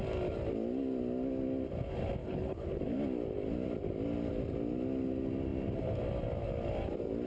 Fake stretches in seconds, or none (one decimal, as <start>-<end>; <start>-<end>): 2.2-2.8